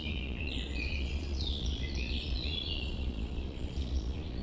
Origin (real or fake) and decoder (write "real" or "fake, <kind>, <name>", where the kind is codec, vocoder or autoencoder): fake, vocoder, Vocos